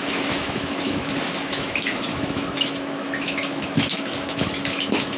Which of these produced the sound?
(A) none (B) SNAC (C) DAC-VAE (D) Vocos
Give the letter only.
C